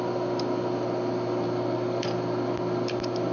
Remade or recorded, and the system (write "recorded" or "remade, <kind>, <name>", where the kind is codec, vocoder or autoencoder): recorded